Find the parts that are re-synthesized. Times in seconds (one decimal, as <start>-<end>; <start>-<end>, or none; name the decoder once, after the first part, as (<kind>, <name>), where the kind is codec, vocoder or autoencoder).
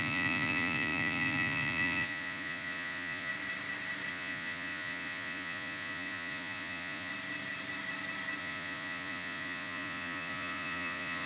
0.0-3.3 (vocoder, Vocos); 4.1-7.1; 8.4-11.3